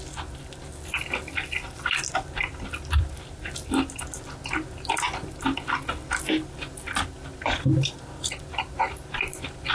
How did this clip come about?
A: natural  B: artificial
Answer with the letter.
A